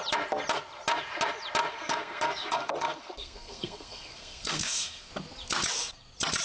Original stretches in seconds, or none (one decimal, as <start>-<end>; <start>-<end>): 0.0-1.7; 5.1-6.4